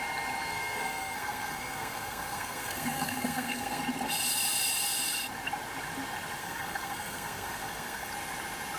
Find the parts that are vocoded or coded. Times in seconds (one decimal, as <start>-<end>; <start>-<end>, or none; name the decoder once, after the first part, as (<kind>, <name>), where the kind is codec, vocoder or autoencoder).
0.5-3.8 (codec, SNAC); 6.4-8.1